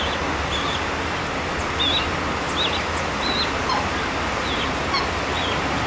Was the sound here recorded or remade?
recorded